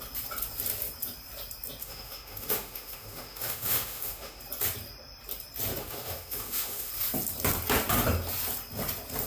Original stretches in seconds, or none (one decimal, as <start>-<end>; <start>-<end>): 0.0-1.8; 4.4-5.8; 6.9-9.3